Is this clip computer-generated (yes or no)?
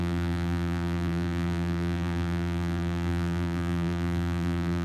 yes